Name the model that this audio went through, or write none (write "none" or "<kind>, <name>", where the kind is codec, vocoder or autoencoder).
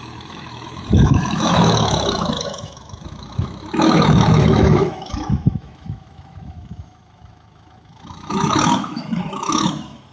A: autoencoder, DAC-VAE